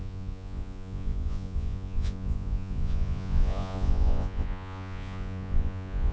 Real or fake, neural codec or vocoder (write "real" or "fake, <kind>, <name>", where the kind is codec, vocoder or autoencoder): fake, vocoder, Vocos